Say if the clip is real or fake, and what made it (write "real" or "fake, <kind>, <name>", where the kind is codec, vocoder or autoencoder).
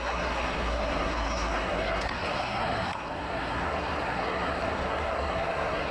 fake, codec, SNAC